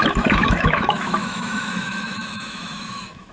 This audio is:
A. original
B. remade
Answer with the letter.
B